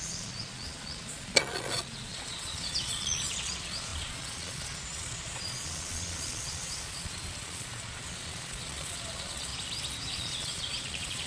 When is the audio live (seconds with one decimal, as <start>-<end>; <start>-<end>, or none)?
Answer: 9.5-10.1